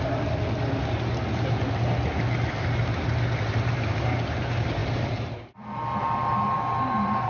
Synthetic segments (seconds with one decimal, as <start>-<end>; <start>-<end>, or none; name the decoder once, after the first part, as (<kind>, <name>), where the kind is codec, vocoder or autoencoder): none